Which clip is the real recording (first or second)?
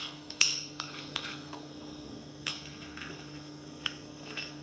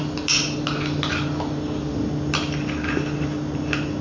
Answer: second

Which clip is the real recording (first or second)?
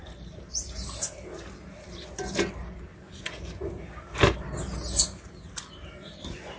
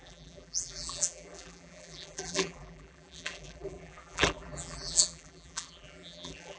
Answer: first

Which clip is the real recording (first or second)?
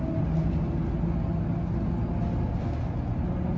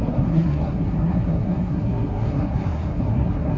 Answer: first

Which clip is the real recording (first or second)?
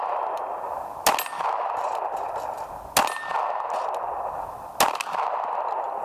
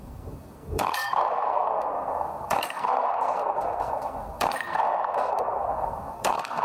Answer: first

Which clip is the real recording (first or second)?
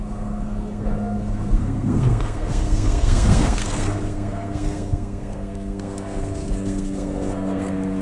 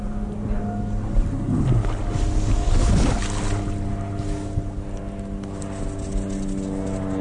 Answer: second